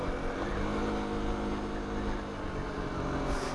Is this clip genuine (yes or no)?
yes